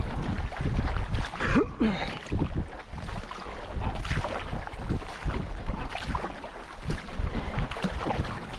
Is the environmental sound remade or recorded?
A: recorded